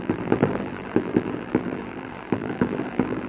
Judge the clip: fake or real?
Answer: fake